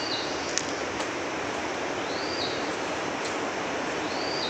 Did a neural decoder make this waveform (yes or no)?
no